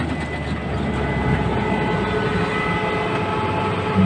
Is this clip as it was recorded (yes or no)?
yes